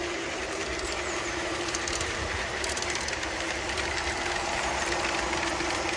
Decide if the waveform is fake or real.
fake